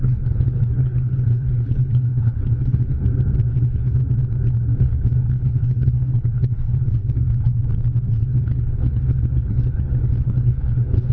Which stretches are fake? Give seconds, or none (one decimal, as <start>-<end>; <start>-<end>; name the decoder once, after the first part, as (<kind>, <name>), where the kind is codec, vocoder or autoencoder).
0.0-3.0 (codec, HILCodec); 3.5-4.0; 4.8-7.6; 8.1-11.1